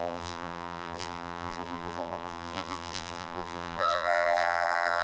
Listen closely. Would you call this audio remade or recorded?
remade